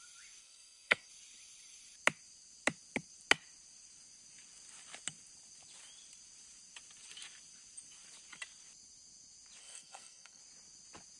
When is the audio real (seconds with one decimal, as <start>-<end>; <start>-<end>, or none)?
0.0-0.4; 1.1-9.6; 10.4-11.2